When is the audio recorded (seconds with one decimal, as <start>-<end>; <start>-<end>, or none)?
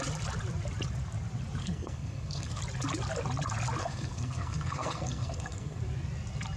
0.0-1.6; 2.6-3.8; 5.8-6.6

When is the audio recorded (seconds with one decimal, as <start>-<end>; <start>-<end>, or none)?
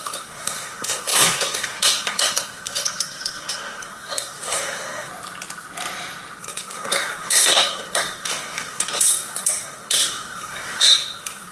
5.1-6.4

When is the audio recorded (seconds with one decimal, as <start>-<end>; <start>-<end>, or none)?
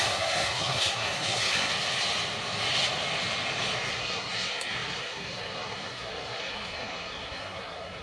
1.7-3.9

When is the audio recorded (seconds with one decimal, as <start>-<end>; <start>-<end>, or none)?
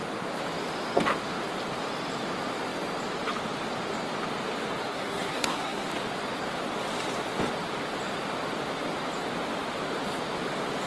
0.0-4.9; 5.9-10.9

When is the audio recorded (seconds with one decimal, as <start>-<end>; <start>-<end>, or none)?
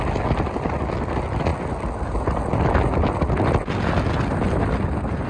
0.0-5.3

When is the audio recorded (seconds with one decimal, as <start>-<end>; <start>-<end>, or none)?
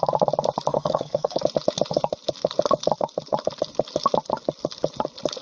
0.0-0.7; 1.4-5.4